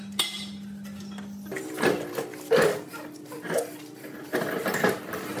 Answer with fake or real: real